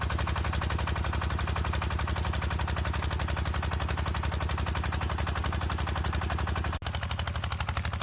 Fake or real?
real